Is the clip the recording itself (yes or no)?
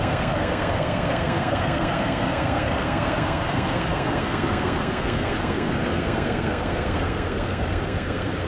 no